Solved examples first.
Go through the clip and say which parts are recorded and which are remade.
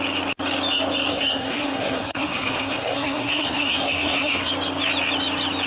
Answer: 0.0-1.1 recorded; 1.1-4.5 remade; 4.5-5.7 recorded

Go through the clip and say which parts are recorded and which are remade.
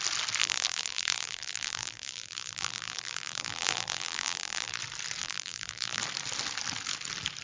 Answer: 0.0-0.4 recorded; 0.4-4.8 remade; 4.8-5.2 recorded; 5.2-6.0 remade; 6.0-7.4 recorded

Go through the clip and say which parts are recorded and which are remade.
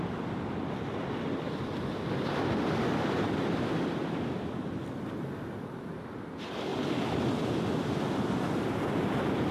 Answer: 0.0-9.5 recorded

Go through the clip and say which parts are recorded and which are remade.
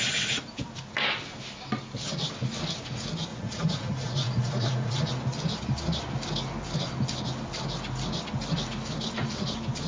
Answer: 0.0-3.3 recorded; 3.3-5.1 remade; 5.1-9.9 recorded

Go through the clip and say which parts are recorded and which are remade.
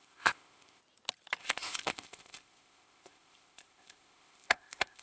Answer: 0.0-0.8 remade; 0.8-1.4 recorded; 1.4-5.0 remade